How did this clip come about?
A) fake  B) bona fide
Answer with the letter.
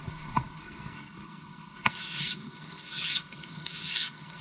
A